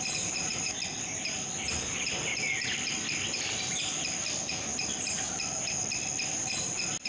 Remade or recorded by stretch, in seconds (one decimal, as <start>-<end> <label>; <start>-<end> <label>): 0.0-7.1 recorded